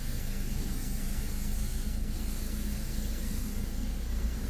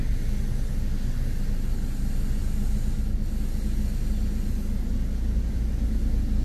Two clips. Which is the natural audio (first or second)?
second